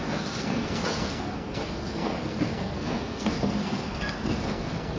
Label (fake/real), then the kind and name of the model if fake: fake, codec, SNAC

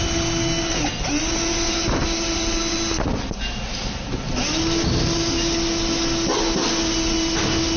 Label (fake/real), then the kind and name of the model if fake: real